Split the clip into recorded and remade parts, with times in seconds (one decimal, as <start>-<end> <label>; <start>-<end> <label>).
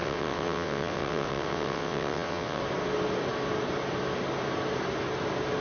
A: 0.0-2.6 remade; 2.6-5.6 recorded